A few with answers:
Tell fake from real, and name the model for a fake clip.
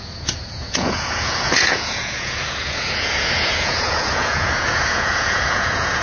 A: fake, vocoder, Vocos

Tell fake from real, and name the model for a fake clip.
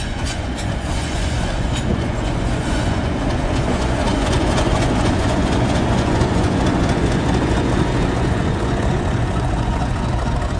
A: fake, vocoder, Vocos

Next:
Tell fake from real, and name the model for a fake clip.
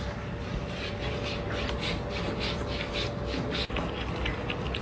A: real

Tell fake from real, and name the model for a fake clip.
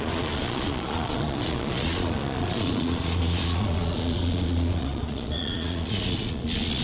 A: fake, vocoder, Vocos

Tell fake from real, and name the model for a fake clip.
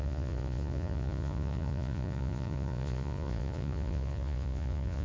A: fake, vocoder, Vocos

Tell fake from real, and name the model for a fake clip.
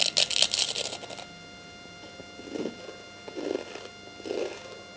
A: real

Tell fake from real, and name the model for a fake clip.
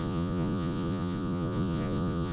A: fake, vocoder, Vocos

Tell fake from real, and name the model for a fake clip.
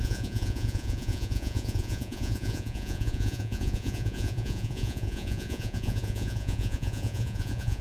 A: fake, vocoder, Vocos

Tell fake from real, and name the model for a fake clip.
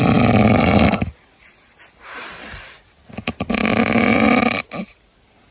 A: real